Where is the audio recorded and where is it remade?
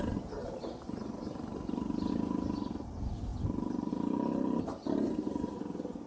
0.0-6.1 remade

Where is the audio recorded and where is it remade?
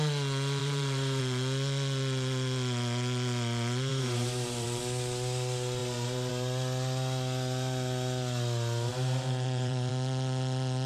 0.0-0.6 recorded; 0.6-1.2 remade; 1.2-3.9 recorded; 3.9-4.8 remade; 4.8-5.8 recorded; 5.8-6.3 remade; 6.3-8.9 recorded; 8.9-9.9 remade; 9.9-10.9 recorded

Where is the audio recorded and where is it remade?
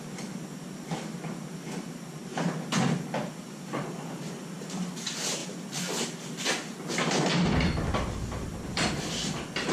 0.0-2.2 recorded; 2.2-2.7 remade; 2.7-9.7 recorded